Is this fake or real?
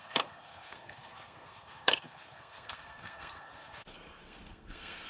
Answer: fake